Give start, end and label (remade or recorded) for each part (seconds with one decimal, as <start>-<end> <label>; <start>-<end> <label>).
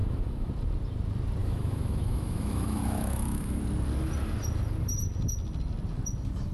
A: 0.0-0.5 remade; 0.5-1.4 recorded; 1.4-3.6 remade; 3.6-6.5 recorded